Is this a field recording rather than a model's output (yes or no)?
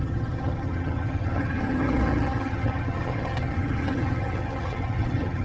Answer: no